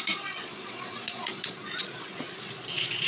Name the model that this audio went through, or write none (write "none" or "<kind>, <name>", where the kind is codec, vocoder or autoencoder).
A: vocoder, Vocos